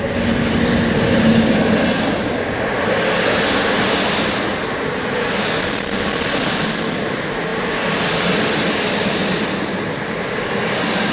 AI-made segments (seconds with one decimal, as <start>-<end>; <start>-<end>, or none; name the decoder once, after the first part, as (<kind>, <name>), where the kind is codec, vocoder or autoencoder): none